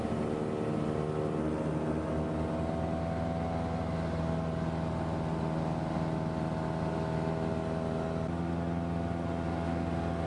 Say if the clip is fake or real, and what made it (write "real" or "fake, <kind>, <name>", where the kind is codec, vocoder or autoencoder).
real